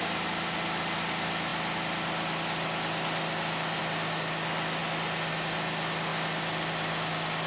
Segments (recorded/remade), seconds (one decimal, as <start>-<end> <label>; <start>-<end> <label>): 0.0-7.5 recorded

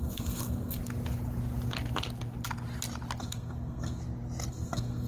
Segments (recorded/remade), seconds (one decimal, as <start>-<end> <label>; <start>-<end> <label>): 0.0-0.8 remade; 0.8-3.2 recorded; 3.2-4.0 remade; 4.0-4.5 recorded; 4.5-5.1 remade

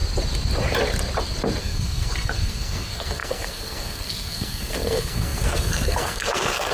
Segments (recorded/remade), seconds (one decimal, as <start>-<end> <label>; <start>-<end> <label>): 0.0-1.6 recorded; 1.6-6.7 remade

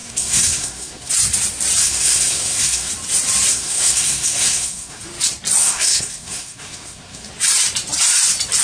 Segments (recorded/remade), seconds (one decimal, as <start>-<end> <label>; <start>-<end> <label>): 0.0-1.1 remade; 1.1-1.8 recorded; 1.8-2.9 remade; 2.9-3.5 recorded; 3.5-5.0 remade; 5.0-5.6 recorded; 5.6-7.3 remade; 7.3-8.6 recorded

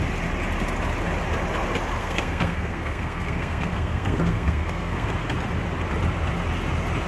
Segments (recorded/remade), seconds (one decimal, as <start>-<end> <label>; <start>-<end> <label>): 0.0-2.0 recorded; 2.0-5.1 remade; 5.1-7.1 recorded